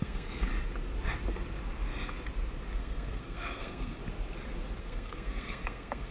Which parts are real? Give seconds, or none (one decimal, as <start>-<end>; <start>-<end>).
0.5-2.8; 4.0-4.8